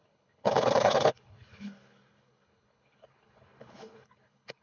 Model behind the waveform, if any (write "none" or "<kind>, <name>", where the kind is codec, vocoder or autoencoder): codec, HILCodec